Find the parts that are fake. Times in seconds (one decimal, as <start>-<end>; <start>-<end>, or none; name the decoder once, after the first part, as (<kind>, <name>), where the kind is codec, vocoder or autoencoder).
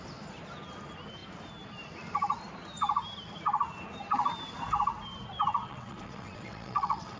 5.6-7.2 (vocoder, WaveNeXt)